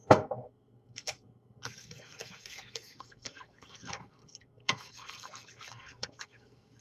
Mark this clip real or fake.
fake